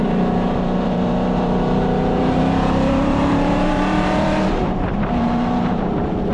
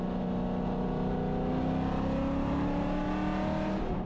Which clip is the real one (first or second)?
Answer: second